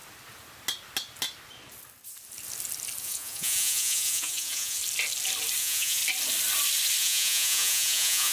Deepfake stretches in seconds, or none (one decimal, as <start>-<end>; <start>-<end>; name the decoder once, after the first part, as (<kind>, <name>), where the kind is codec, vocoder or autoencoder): 3.0-4.8 (vocoder, Vocos); 5.6-6.0; 7.0-8.3